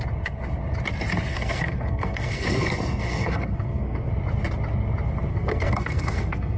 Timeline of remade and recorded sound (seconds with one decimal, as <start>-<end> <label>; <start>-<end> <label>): 0.0-1.3 recorded; 1.3-4.1 remade; 4.1-5.3 recorded; 5.3-6.6 remade